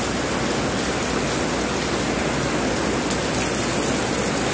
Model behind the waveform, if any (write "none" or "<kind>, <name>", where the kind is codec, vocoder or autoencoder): none